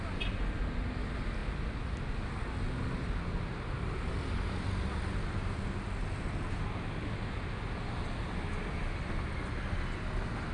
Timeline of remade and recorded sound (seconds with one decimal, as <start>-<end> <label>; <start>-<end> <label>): 0.0-10.5 recorded